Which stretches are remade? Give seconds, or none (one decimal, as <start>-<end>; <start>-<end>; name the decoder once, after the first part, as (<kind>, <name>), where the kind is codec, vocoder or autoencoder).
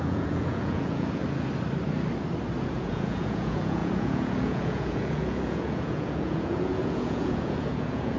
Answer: 0.0-1.2 (vocoder, Vocos); 2.6-8.2